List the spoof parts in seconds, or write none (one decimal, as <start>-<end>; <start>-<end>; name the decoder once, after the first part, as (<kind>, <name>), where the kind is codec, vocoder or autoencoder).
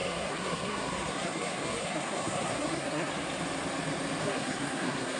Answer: 0.0-3.1 (codec, SNAC); 4.2-5.2